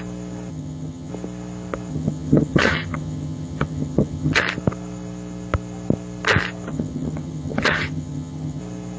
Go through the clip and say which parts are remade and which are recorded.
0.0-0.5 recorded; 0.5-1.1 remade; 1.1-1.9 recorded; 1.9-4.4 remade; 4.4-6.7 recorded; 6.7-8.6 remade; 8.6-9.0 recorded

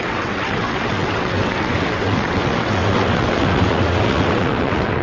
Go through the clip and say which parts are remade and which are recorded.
0.0-5.0 remade